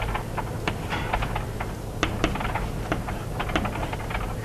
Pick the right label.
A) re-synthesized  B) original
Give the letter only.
B